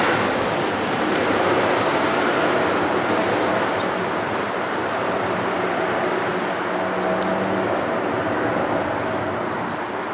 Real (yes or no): yes